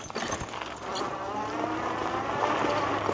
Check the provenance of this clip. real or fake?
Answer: real